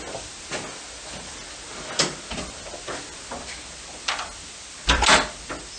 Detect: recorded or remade recorded